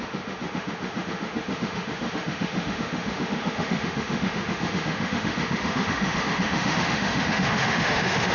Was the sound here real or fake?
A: fake